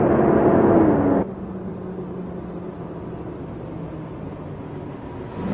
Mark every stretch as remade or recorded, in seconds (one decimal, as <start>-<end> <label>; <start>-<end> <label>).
0.0-5.5 recorded